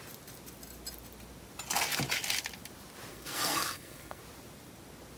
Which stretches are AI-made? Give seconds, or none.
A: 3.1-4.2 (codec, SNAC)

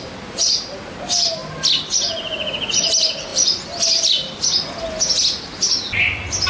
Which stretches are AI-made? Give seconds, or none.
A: none

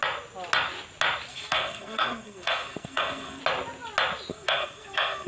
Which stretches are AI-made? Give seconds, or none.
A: 1.3-3.4 (codec, SNAC); 4.3-5.3

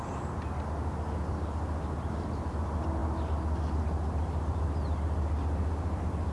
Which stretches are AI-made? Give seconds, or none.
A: none